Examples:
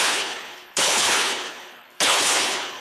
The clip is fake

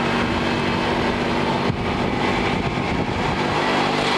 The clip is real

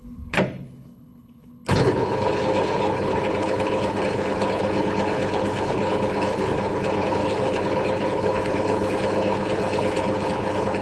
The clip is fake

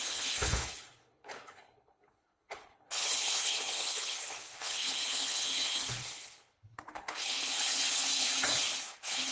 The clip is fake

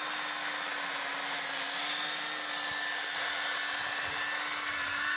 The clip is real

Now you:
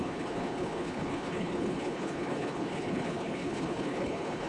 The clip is fake